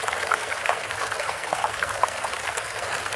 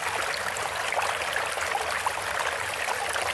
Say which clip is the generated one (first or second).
first